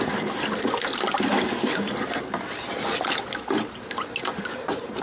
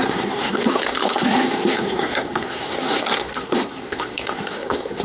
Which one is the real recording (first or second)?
first